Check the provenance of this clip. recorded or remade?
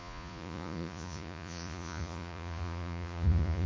remade